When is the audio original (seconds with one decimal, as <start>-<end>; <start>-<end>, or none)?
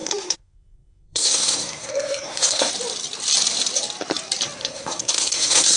2.7-4.6